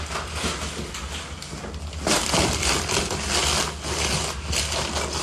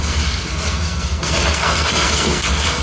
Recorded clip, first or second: first